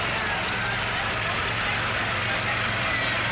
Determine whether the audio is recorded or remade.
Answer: recorded